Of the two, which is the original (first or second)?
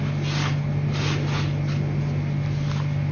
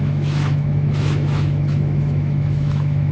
first